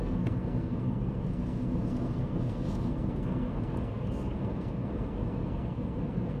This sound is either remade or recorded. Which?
remade